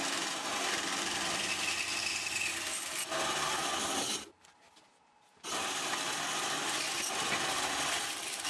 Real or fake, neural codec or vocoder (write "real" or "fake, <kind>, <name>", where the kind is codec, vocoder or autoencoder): real